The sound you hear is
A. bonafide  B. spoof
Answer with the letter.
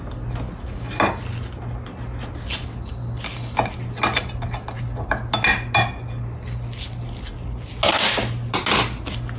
A